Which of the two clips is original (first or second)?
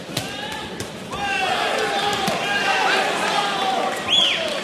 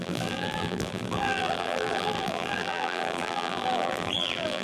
first